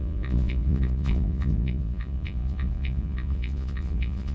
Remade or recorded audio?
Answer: remade